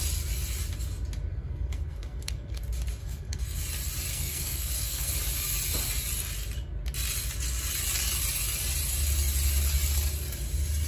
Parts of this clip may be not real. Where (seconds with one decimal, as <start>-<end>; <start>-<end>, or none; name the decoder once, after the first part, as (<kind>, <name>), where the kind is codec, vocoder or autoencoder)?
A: 1.3-2.6 (codec, SNAC); 3.0-3.6; 4.1-5.1